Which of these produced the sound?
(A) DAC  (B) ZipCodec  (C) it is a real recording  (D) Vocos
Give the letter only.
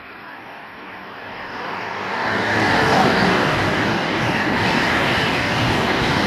A